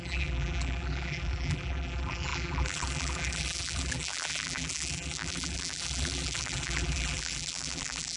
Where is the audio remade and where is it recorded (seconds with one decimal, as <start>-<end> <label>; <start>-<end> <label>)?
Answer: 0.0-8.2 remade